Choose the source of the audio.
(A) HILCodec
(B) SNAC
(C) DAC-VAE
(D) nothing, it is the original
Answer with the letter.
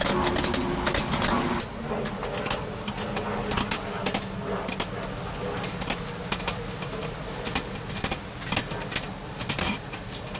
D